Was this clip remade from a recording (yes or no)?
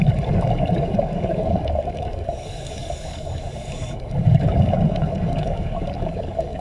yes